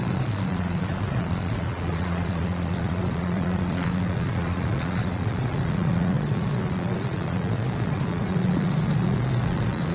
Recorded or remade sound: remade